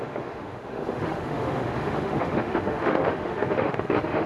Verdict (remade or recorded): remade